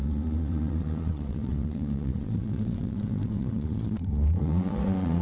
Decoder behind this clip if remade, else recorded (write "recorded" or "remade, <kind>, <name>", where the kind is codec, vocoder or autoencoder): remade, vocoder, WaveNeXt